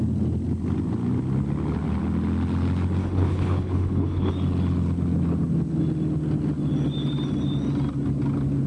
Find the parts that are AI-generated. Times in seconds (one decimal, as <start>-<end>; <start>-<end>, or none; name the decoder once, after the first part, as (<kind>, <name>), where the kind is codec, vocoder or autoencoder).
3.0-4.3 (codec, HILCodec)